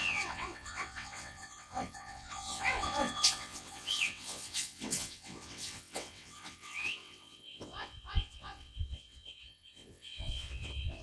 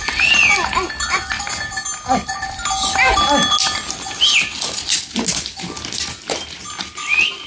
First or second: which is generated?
first